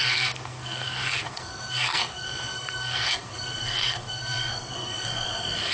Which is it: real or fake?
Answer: fake